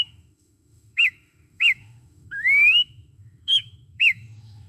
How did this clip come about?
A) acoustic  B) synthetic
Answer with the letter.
B